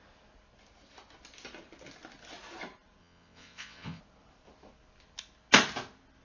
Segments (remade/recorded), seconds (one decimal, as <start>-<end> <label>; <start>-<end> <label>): 0.0-3.0 recorded; 3.0-4.0 remade; 4.0-6.2 recorded